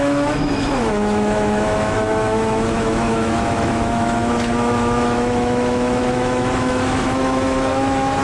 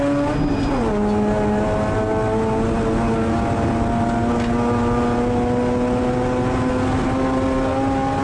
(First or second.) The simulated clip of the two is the first